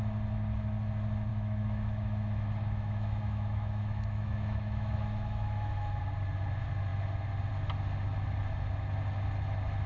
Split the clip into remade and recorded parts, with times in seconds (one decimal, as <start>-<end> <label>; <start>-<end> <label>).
0.0-1.3 recorded; 1.3-6.0 remade; 6.0-9.9 recorded